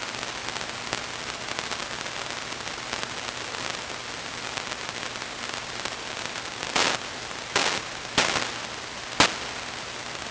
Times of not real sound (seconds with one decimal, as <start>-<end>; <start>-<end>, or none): none